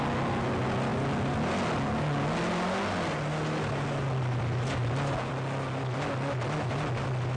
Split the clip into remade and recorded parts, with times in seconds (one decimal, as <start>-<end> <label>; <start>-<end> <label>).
0.0-7.4 recorded